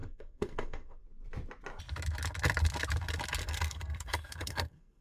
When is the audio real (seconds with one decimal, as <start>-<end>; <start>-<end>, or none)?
1.0-3.4